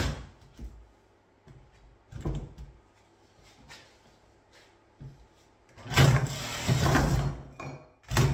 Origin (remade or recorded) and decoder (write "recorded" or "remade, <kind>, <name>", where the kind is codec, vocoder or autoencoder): recorded